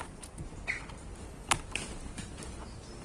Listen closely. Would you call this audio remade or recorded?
recorded